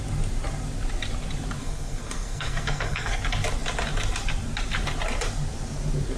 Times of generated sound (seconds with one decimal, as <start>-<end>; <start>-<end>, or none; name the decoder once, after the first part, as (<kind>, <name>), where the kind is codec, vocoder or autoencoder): 1.6-3.2 (codec, SNAC)